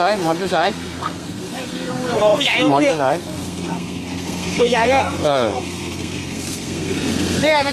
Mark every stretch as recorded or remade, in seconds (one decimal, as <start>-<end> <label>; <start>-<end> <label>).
0.0-7.7 remade